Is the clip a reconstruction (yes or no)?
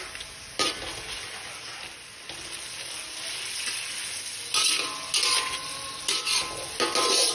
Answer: no